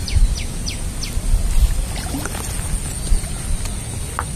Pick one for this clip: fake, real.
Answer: real